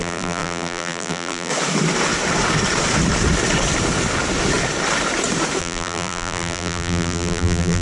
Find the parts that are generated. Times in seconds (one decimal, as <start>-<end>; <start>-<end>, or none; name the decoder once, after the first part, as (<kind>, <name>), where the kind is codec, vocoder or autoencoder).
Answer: 0.0-1.5 (vocoder, BigVGAN v2); 5.6-7.8